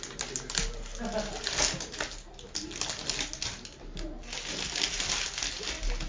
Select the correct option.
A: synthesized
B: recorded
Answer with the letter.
B